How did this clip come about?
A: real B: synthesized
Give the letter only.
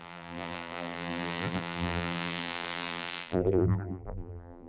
B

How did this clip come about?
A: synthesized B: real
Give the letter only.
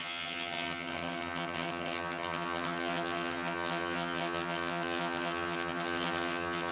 A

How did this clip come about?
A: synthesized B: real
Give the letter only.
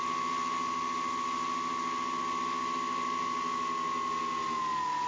B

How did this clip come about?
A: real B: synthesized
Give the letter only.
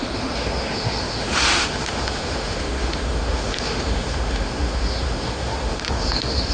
B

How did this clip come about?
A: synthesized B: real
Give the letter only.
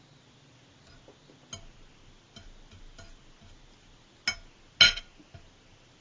B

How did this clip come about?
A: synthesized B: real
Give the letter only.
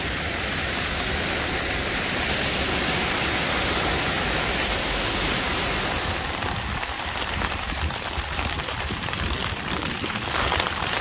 A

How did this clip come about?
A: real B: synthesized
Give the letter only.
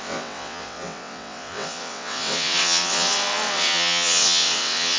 B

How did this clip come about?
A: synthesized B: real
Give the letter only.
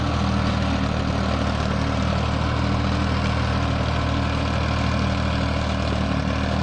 B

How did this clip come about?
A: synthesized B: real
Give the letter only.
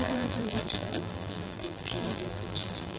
A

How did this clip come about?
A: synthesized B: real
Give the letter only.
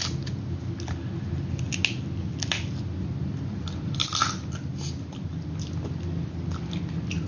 B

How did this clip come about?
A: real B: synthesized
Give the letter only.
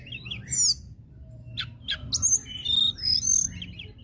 A